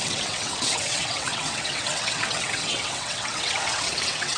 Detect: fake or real fake